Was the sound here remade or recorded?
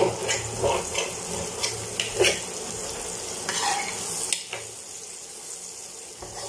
recorded